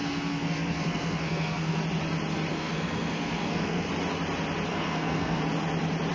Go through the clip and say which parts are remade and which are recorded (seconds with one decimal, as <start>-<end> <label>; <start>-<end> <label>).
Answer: 0.0-1.8 remade; 1.8-2.5 recorded; 2.5-3.9 remade; 3.9-4.7 recorded; 4.7-5.4 remade; 5.4-6.1 recorded